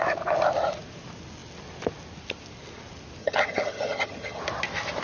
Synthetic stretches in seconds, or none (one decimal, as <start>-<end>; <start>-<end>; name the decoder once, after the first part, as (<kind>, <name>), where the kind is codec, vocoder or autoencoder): 3.2-4.4 (vocoder, HiFi-GAN)